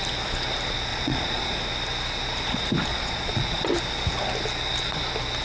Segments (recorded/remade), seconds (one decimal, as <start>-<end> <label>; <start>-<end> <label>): 0.0-0.9 recorded; 0.9-1.6 remade; 1.6-2.9 recorded; 2.9-3.7 remade; 3.7-5.4 recorded